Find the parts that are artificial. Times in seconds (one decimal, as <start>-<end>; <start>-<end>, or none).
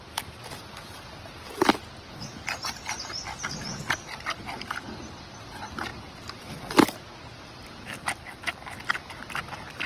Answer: none